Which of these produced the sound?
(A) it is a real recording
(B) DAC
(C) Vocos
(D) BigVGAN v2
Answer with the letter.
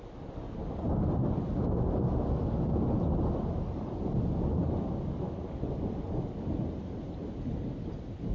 A